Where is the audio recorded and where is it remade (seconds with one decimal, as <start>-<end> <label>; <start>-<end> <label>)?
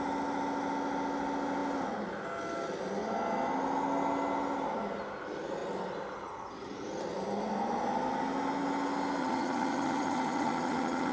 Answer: 0.0-9.2 recorded; 9.2-11.1 remade